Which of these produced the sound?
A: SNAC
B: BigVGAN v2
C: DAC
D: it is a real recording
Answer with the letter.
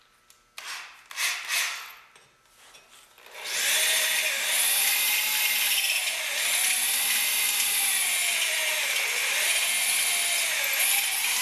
D